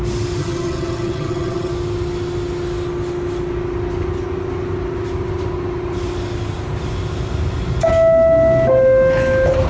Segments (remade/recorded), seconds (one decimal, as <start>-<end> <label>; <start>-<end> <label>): 0.0-0.4 recorded; 0.4-1.7 remade; 1.7-9.7 recorded